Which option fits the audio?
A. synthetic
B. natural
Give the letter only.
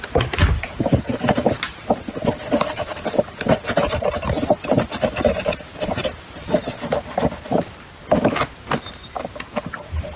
A